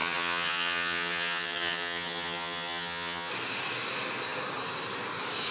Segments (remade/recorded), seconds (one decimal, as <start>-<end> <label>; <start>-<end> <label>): 0.0-3.3 remade; 3.3-5.5 recorded